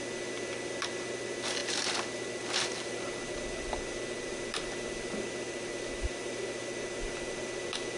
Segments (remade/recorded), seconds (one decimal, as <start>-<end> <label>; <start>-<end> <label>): 0.0-8.0 recorded